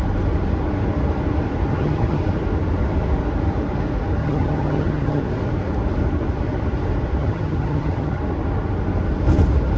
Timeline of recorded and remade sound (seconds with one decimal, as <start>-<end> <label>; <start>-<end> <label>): 0.0-1.7 recorded; 1.7-2.2 remade; 2.2-4.2 recorded; 4.2-5.2 remade; 5.2-7.2 recorded; 7.2-8.2 remade; 8.2-9.8 recorded

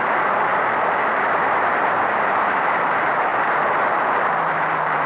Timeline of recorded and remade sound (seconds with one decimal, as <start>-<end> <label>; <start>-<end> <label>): 0.0-5.1 remade

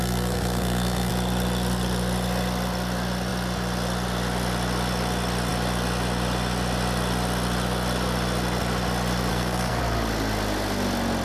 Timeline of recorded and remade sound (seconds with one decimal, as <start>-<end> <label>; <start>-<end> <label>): 0.0-1.1 remade; 1.1-9.3 recorded; 9.3-9.8 remade; 9.8-11.2 recorded

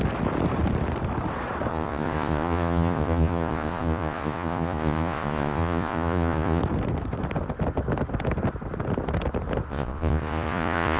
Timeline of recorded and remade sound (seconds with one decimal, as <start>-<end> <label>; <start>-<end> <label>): 0.0-1.7 recorded; 1.7-6.6 remade; 6.6-9.7 recorded; 9.7-11.0 remade

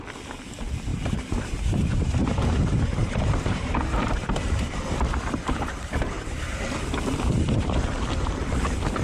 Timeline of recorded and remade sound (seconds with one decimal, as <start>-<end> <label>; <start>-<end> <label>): 0.0-0.9 recorded; 0.9-2.4 remade; 2.4-3.0 recorded; 3.0-4.8 remade; 4.8-5.4 recorded; 5.4-6.4 remade; 6.4-9.0 recorded

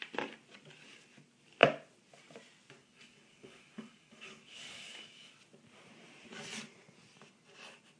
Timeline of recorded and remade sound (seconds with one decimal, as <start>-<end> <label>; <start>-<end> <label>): 0.0-2.8 recorded; 2.8-5.4 remade; 5.4-8.0 recorded